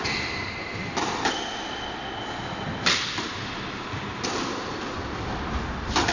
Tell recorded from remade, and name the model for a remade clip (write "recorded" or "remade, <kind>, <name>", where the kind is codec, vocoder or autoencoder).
recorded